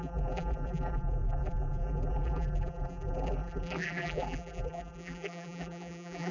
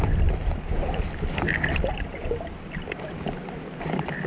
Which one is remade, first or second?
first